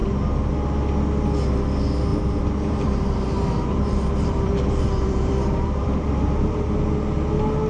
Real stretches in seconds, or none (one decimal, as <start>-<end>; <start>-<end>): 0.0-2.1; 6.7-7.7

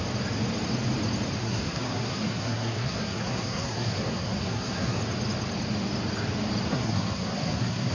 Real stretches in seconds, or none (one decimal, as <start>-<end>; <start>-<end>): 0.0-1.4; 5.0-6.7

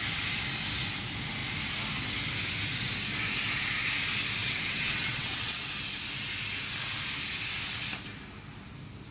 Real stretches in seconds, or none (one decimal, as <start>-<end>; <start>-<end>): 0.0-4.4; 5.7-9.1

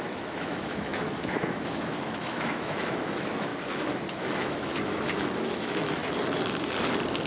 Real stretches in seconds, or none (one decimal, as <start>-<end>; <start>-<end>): 3.5-4.1; 6.0-7.3